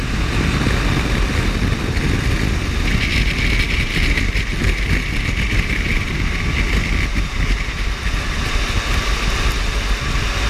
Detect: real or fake real